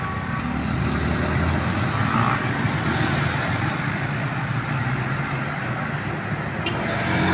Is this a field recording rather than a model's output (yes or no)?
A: yes